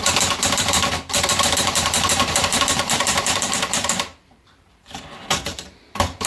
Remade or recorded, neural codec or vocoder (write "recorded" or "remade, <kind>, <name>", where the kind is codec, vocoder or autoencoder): remade, vocoder, BigVGAN v2